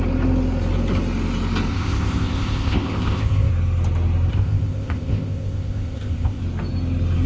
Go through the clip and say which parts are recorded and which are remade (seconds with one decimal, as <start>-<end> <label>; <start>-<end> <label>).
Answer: 0.0-1.7 recorded; 1.7-3.5 remade; 3.5-4.3 recorded; 4.3-6.4 remade; 6.4-7.3 recorded